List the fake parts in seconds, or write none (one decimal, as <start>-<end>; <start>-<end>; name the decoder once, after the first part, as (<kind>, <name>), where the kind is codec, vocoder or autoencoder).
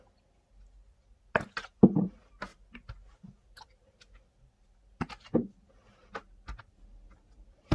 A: none